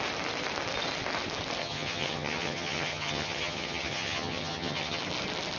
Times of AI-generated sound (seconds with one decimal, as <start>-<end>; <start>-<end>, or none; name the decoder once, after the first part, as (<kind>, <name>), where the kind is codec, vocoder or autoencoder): 1.6-5.0 (vocoder, HiFi-GAN)